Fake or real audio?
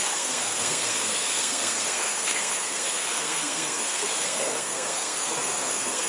fake